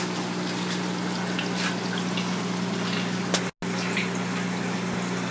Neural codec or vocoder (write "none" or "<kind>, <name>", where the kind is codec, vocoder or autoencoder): none